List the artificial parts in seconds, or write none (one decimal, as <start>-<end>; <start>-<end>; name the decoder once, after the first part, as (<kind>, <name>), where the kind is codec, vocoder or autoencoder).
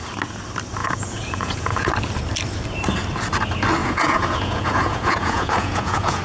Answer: 0.8-1.9 (vocoder, Vocos); 3.8-6.2